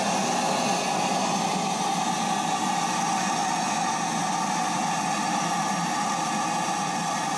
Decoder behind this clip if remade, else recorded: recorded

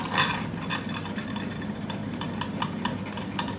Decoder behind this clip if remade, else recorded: recorded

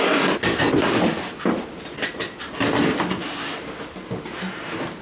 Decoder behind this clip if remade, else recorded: recorded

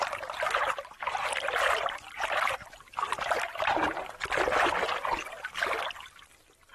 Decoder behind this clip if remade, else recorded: remade, vocoder, BigVGAN v2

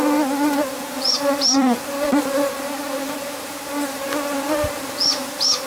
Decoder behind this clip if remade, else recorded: remade, vocoder, BigVGAN v2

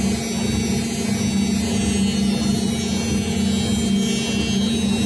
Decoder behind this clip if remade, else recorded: recorded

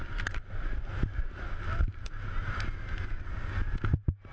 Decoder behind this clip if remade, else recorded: recorded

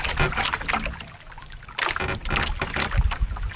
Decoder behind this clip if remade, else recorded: recorded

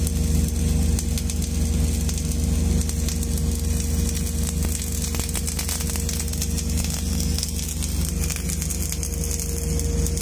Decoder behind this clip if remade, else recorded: recorded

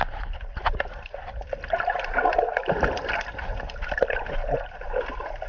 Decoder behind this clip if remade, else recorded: recorded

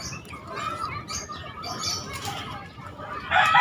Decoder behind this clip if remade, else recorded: recorded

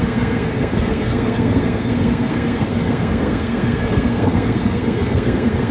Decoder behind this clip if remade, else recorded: remade, codec, SNAC